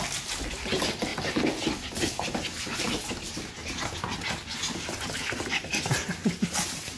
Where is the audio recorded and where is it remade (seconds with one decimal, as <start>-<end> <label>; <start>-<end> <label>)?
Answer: 0.0-7.0 recorded